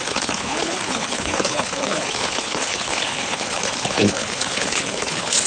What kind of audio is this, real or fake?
fake